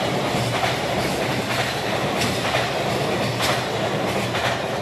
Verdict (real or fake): real